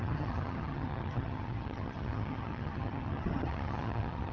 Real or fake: fake